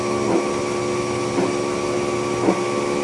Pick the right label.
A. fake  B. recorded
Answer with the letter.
B